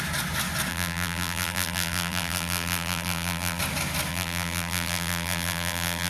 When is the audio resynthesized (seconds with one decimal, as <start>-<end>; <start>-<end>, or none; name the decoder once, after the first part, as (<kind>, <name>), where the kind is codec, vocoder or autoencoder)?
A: 0.7-3.6 (vocoder, BigVGAN v2); 4.1-6.1